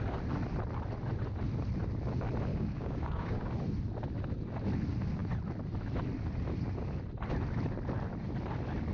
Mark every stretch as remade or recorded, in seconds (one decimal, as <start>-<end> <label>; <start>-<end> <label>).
0.0-2.5 recorded; 2.5-3.5 remade; 3.5-8.9 recorded